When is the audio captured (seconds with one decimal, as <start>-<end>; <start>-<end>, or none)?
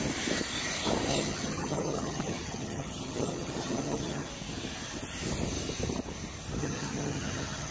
0.0-1.1; 4.3-6.6